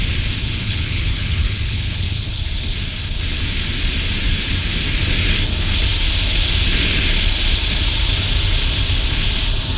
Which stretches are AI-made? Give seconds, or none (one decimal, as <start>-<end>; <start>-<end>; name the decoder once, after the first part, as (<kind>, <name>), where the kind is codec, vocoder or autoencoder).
0.4-2.4 (codec, HILCodec)